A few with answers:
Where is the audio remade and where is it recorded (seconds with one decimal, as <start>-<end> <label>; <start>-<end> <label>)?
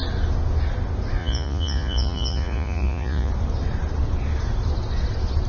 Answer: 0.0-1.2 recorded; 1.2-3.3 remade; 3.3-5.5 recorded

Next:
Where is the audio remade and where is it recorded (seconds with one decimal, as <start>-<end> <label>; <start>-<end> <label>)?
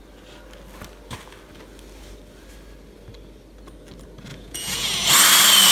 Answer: 0.0-4.3 recorded; 4.3-5.1 remade; 5.1-5.7 recorded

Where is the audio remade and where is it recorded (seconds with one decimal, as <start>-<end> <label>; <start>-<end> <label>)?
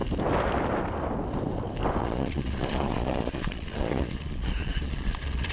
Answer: 0.0-2.0 recorded; 2.0-5.5 remade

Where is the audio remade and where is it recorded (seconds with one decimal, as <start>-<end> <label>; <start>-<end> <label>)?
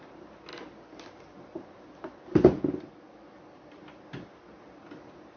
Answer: 0.0-5.4 recorded